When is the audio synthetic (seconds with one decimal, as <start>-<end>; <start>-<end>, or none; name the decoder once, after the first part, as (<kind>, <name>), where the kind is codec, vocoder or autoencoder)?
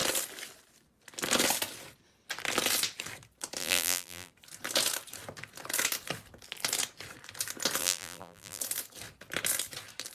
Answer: 3.6-4.3 (vocoder, BigVGAN v2); 7.8-8.6